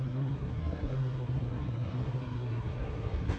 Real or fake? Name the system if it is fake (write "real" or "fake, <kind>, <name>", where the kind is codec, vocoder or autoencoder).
fake, codec, SNAC